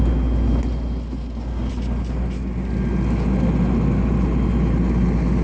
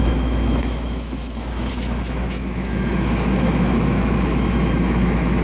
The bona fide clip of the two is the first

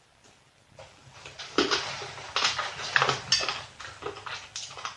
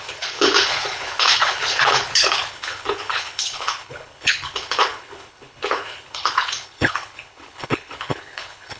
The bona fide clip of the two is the first